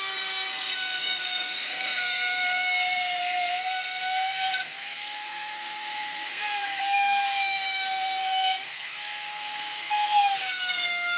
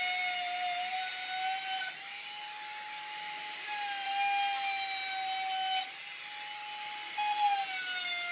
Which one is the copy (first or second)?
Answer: first